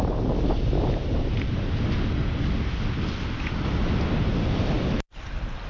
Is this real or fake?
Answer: real